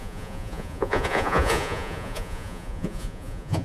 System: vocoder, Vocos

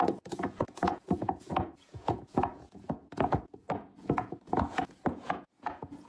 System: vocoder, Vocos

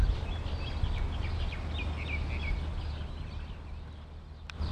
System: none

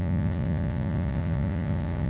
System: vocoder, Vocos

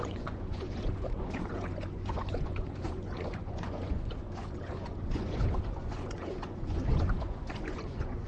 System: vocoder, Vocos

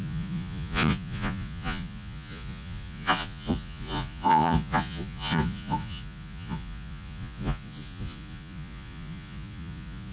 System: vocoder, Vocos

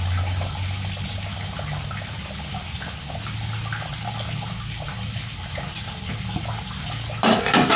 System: none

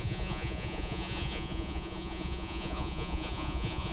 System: vocoder, Vocos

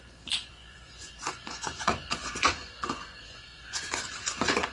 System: vocoder, Vocos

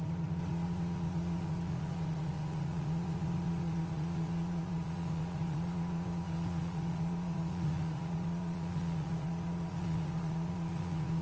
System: vocoder, Vocos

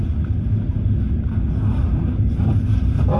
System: none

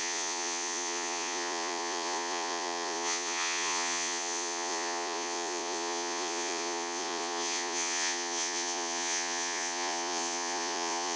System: vocoder, Vocos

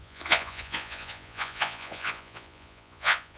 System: vocoder, Vocos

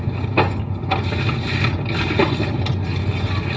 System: none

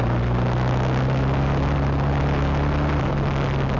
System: none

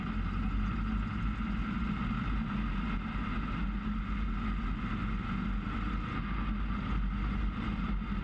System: none